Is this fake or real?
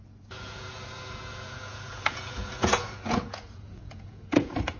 fake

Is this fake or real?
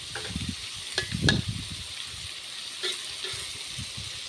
real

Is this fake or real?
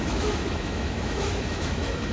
fake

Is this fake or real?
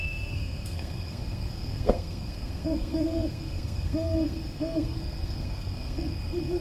fake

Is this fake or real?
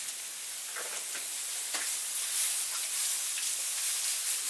real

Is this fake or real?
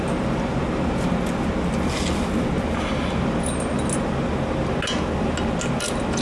real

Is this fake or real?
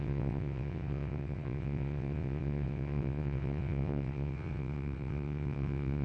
fake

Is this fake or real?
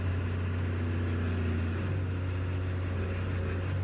real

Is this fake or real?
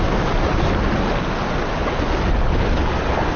real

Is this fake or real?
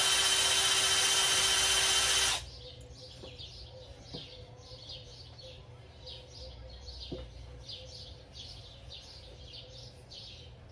real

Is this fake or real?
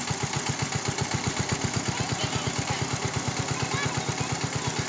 real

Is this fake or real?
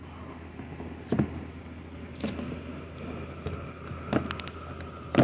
real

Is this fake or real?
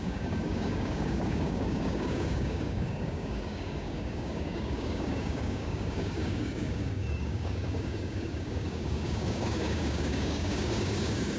fake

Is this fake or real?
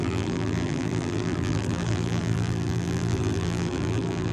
fake